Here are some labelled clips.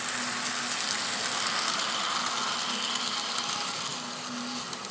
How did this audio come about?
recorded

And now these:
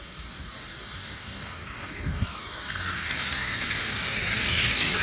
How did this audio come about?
remade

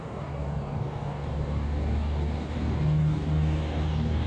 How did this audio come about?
remade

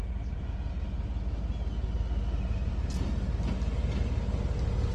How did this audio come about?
recorded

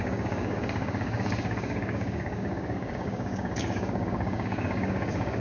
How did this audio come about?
remade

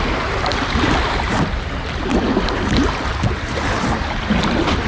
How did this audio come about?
recorded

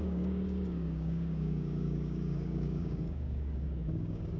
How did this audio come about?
remade